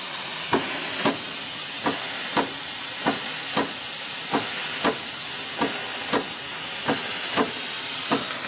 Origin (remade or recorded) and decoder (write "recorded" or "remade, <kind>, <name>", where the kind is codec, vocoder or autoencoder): recorded